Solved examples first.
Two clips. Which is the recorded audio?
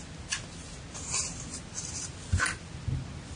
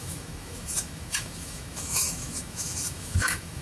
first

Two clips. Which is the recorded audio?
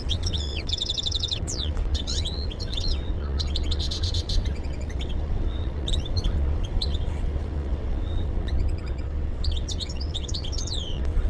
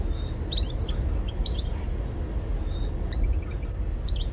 second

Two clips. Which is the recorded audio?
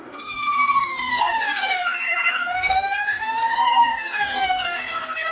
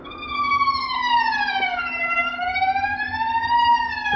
second